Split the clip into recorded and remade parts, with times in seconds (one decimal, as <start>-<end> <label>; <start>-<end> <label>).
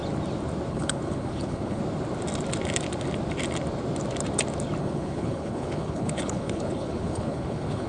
0.0-0.7 recorded; 0.7-1.8 remade; 1.8-4.8 recorded; 4.8-7.9 remade